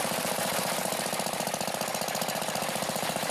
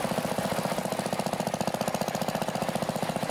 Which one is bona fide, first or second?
second